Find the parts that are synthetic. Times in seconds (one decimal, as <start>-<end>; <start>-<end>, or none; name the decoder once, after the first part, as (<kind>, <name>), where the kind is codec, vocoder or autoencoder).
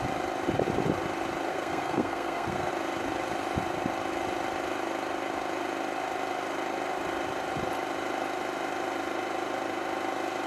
1.5-2.7 (codec, SNAC)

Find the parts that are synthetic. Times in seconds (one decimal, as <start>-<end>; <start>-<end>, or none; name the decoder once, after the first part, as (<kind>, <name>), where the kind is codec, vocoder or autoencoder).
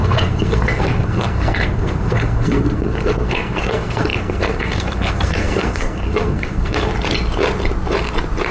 0.0-6.9 (codec, SNAC)